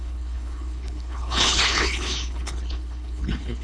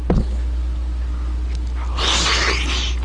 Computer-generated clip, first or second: first